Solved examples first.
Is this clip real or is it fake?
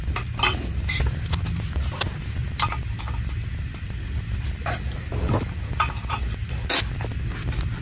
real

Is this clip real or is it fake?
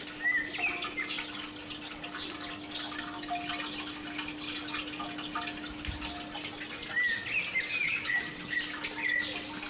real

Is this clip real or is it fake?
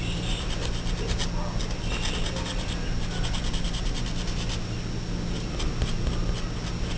real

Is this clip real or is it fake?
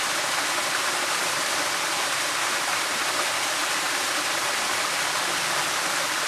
real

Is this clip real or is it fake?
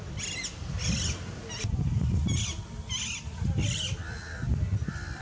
real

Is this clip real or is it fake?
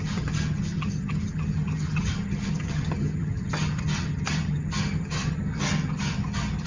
fake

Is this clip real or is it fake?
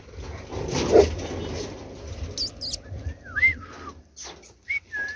real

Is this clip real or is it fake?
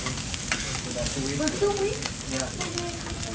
real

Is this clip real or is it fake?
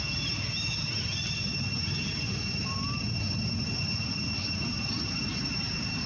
real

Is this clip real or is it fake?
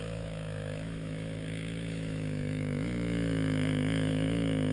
fake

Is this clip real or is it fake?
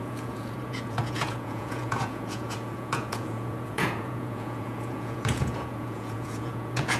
fake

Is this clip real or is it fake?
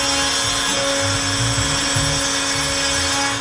real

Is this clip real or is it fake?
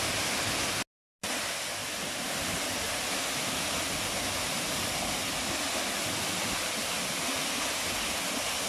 real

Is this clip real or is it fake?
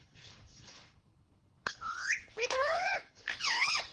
fake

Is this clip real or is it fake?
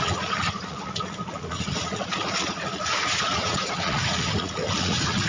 fake